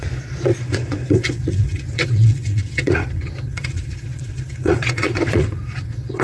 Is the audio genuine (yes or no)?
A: no